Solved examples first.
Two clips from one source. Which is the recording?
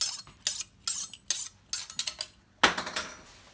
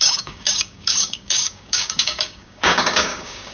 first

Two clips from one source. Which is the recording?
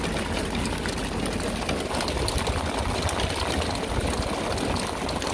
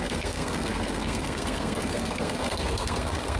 first